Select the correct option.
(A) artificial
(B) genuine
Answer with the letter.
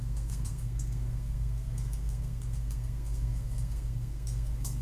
A